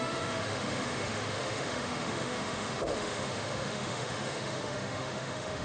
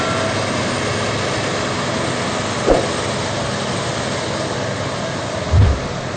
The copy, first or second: first